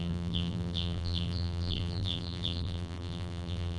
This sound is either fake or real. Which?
fake